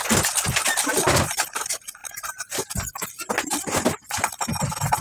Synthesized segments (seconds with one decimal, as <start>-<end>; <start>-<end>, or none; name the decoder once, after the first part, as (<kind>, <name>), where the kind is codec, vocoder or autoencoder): none